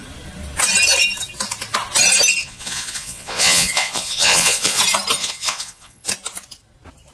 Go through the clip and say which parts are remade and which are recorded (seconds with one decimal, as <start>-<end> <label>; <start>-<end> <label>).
0.0-2.4 recorded; 2.4-4.8 remade; 4.8-5.2 recorded; 5.2-6.1 remade; 6.1-7.1 recorded